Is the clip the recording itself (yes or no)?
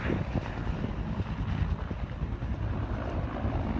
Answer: yes